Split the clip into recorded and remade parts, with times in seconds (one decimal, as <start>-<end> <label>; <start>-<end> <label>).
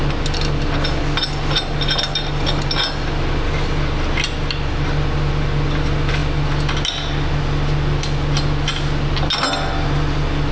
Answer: 0.0-10.5 recorded